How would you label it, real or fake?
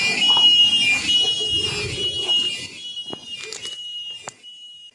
real